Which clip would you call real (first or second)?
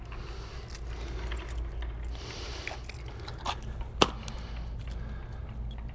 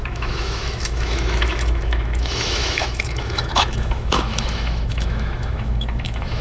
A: first